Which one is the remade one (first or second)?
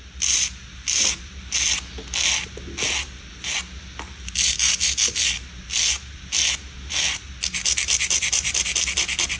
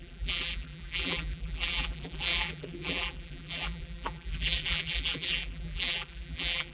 second